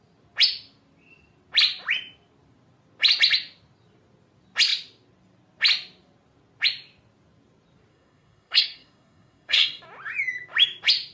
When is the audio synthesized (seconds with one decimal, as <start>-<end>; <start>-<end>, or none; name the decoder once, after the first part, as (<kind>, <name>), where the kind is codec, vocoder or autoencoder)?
7.9-9.8 (codec, SNAC)